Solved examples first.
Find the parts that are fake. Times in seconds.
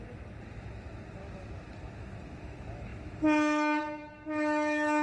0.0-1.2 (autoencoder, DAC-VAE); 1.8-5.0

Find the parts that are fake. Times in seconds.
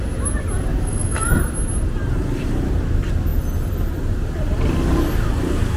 0.7-1.4 (autoencoder, DAC-VAE)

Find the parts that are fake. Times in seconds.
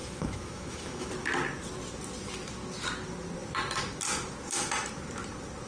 0.0-1.1 (autoencoder, DAC-VAE)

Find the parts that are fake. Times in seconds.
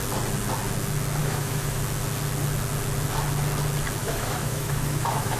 1.2-1.8 (autoencoder, DAC-VAE); 4.0-5.4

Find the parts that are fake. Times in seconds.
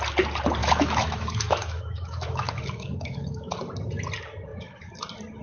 0.6-3.6 (autoencoder, DAC-VAE); 4.5-5.0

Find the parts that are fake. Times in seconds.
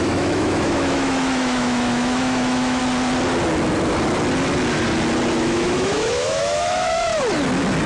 0.0-2.8 (autoencoder, DAC-VAE); 5.4-7.1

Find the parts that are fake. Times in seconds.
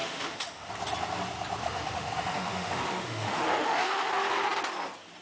0.0-0.7 (autoencoder, DAC-VAE); 1.6-4.1